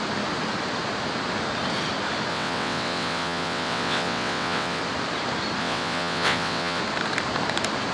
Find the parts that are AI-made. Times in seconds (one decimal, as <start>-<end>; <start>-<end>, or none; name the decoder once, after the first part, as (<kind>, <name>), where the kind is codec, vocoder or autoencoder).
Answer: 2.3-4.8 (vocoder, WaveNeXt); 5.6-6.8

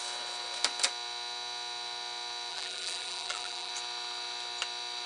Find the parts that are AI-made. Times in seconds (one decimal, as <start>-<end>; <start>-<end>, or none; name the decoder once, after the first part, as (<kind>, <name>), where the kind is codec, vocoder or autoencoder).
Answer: 2.5-3.7 (vocoder, BigVGAN v2)

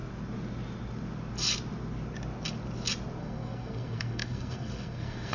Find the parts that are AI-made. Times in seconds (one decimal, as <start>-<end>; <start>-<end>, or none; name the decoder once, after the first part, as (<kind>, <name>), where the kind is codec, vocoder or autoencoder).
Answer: 3.2-5.3 (codec, SNAC)